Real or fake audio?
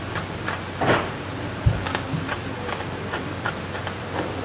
real